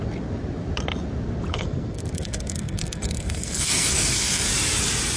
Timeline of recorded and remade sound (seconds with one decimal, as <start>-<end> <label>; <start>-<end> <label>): 0.0-1.5 recorded; 1.5-4.5 remade; 4.5-5.2 recorded